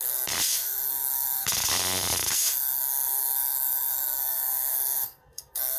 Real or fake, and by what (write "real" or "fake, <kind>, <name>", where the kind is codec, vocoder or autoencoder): fake, codec, SNAC